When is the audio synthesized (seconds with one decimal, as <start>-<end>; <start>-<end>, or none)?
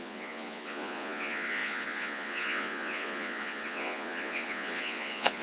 0.0-5.4